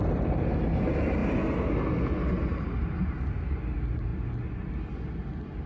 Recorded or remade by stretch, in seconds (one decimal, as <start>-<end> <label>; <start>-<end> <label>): 0.0-5.7 recorded